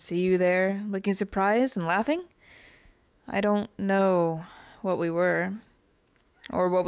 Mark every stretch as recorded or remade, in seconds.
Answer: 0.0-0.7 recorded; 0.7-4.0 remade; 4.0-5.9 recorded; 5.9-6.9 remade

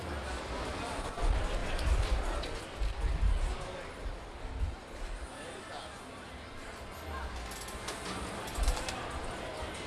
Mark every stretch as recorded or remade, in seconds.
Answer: 0.0-1.6 recorded; 1.6-2.6 remade; 2.6-9.9 recorded

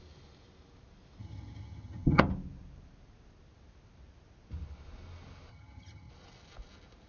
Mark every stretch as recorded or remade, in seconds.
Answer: 0.0-1.2 recorded; 1.2-2.2 remade; 2.2-5.5 recorded; 5.5-6.1 remade; 6.1-7.1 recorded

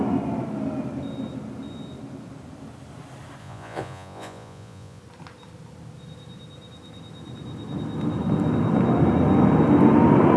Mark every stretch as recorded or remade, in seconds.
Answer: 0.0-3.4 recorded; 3.4-5.0 remade; 5.0-10.4 recorded